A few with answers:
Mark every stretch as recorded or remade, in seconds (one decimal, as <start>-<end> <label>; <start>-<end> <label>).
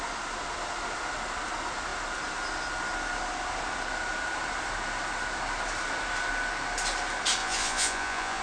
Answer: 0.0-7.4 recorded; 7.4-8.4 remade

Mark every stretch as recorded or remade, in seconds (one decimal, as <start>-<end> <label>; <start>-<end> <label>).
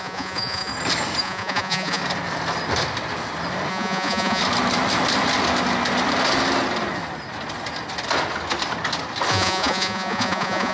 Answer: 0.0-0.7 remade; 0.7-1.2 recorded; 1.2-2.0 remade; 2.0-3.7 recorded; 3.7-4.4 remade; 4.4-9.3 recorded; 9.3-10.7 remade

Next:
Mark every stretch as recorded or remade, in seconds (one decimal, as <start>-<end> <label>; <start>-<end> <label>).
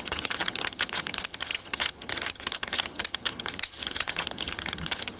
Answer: 0.0-5.2 remade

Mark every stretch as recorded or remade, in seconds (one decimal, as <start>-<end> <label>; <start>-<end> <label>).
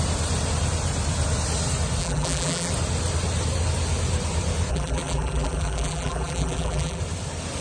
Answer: 0.0-2.0 recorded; 2.0-2.7 remade; 2.7-4.7 recorded; 4.7-7.0 remade; 7.0-7.6 recorded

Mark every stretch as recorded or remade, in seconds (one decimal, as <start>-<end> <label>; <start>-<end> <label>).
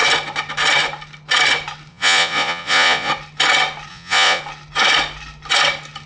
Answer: 0.0-1.9 recorded; 1.9-3.1 remade; 3.1-3.9 recorded; 3.9-4.4 remade; 4.4-6.1 recorded